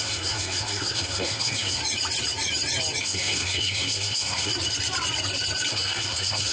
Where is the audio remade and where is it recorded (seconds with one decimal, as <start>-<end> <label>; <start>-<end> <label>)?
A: 0.0-1.8 remade; 1.8-3.0 recorded; 3.0-4.5 remade; 4.5-5.7 recorded; 5.7-6.5 remade